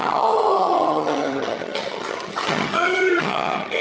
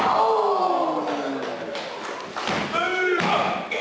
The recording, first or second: second